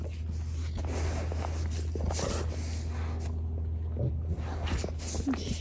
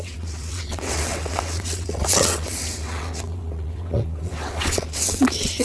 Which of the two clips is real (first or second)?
first